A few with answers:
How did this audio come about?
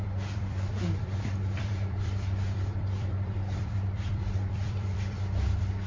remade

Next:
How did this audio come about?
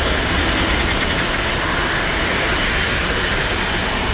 recorded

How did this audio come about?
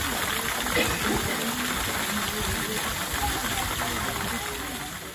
recorded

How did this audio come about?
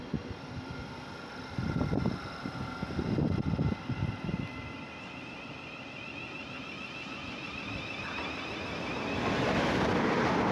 recorded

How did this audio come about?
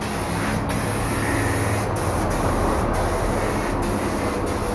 recorded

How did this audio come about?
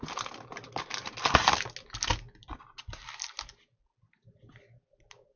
recorded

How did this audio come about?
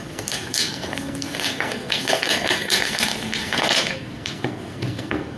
remade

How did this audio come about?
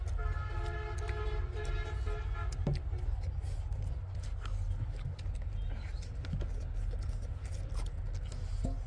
recorded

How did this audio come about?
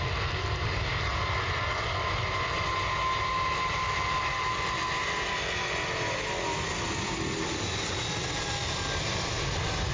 recorded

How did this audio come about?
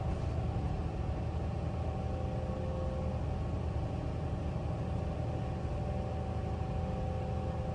recorded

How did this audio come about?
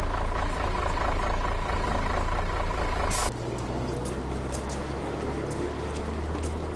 recorded